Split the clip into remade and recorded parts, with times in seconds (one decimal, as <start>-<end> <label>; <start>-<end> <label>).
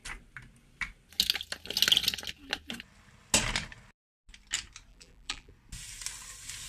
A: 0.0-4.9 recorded; 4.9-5.5 remade; 5.5-6.7 recorded